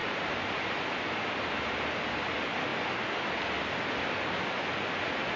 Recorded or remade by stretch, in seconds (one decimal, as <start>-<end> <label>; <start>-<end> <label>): 0.0-2.2 remade; 2.2-5.4 recorded